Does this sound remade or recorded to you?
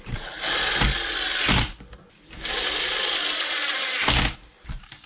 recorded